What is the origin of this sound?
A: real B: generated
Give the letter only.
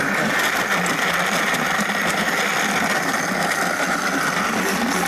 A